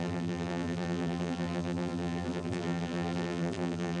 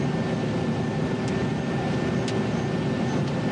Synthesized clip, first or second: first